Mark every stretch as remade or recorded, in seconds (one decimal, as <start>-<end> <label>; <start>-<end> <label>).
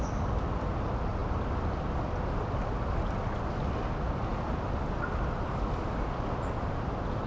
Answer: 0.0-7.3 recorded